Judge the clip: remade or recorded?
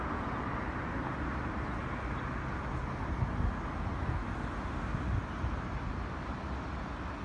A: recorded